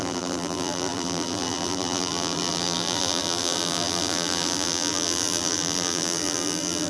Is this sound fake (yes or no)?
yes